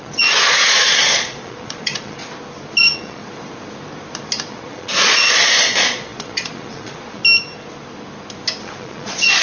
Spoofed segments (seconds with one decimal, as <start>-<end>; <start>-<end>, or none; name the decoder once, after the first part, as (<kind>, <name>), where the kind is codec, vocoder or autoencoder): 0.0-2.2 (vocoder, Vocos); 2.8-3.2; 4.5-7.2; 8.6-9.4